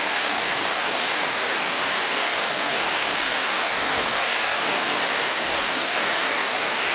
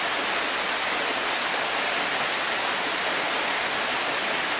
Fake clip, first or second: first